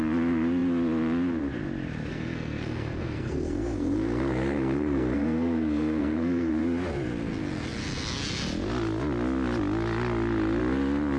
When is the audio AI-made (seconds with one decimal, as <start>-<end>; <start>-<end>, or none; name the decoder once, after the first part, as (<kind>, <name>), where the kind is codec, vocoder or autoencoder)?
2.1-6.5 (codec, SNAC)